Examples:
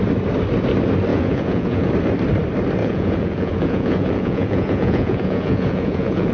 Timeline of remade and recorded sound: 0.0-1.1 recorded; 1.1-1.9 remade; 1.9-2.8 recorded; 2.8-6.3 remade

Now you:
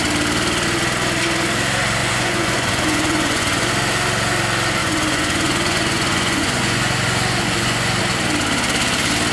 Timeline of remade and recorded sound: 0.0-2.0 recorded; 2.0-3.7 remade; 3.7-4.8 recorded; 4.8-8.0 remade; 8.0-9.3 recorded

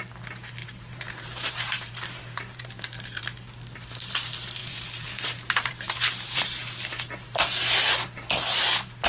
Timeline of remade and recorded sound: 0.0-0.6 recorded; 0.6-3.2 remade; 3.2-4.6 recorded; 4.6-6.4 remade; 6.4-9.1 recorded

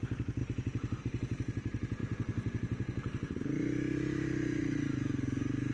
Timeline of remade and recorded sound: 0.0-5.7 recorded

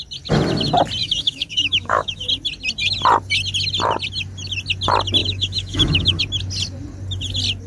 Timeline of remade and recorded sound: 0.0-1.0 recorded; 1.0-2.3 remade; 2.3-5.2 recorded; 5.2-6.2 remade; 6.2-7.7 recorded